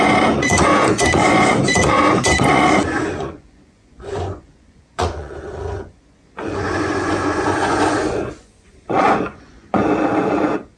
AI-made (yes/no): yes